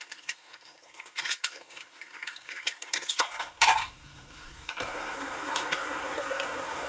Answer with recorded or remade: remade